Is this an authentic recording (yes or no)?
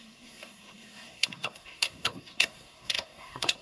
no